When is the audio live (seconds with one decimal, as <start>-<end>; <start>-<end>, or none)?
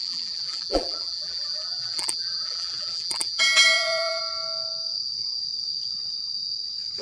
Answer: 4.2-7.0